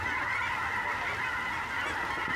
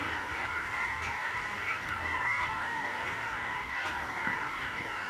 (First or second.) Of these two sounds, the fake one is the second